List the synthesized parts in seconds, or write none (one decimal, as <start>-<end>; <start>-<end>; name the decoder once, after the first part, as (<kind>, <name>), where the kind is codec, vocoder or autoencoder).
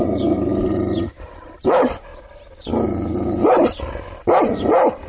0.0-2.1 (vocoder, BigVGAN v2); 4.4-5.1